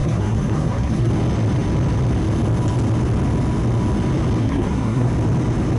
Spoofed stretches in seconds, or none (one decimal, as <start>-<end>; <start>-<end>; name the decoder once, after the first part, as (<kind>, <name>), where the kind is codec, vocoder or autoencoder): 0.0-1.1 (codec, SNAC); 4.4-5.1